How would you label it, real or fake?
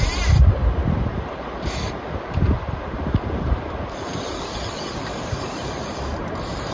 fake